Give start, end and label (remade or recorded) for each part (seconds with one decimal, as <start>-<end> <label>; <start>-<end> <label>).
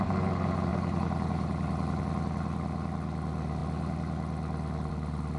0.0-0.7 recorded; 0.7-2.0 remade; 2.0-5.4 recorded